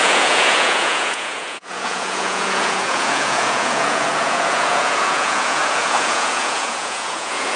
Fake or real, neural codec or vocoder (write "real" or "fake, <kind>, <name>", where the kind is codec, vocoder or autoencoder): fake, vocoder, Vocos